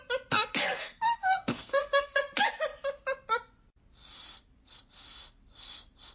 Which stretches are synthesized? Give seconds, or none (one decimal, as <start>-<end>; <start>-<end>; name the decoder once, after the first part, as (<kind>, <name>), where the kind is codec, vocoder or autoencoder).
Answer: 0.6-2.2 (codec, SNAC)